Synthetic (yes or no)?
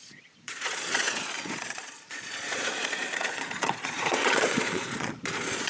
yes